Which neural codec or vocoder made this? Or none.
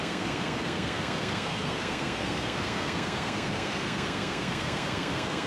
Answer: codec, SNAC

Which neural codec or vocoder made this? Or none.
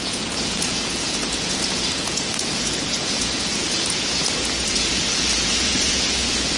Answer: vocoder, Vocos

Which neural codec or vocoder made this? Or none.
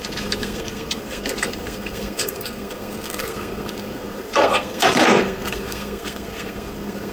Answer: codec, SNAC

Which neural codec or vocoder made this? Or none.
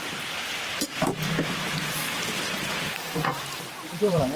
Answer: vocoder, BigVGAN v2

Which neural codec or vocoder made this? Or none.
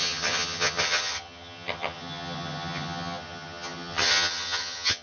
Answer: vocoder, HiFi-GAN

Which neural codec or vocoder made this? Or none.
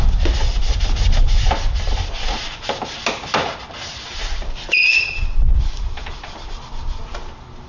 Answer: none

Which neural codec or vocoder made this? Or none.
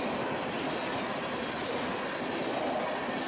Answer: none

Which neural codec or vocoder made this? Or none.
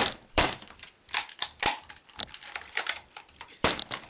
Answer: vocoder, BigVGAN v2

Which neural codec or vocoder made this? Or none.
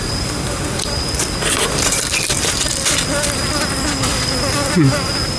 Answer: none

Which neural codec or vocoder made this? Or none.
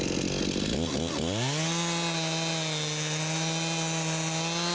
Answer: none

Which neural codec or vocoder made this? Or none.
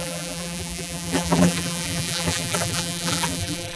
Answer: vocoder, BigVGAN v2